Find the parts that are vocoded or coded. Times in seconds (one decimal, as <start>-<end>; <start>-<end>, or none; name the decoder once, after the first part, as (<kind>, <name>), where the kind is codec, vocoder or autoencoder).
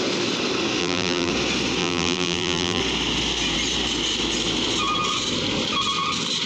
0.8-1.3 (vocoder, BigVGAN v2); 1.8-2.8